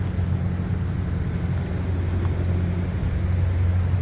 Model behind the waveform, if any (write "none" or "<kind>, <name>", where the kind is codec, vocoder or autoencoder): none